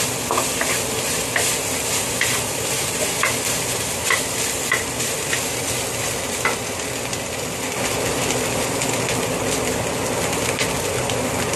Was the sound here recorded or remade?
recorded